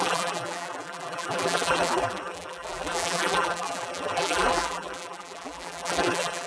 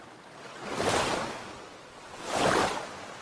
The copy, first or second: first